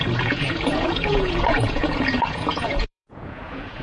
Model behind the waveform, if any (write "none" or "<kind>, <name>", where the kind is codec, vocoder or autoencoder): vocoder, Vocos